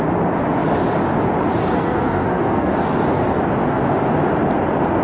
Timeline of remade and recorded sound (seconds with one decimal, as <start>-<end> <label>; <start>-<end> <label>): 0.0-1.6 recorded; 1.6-2.7 remade; 2.7-5.0 recorded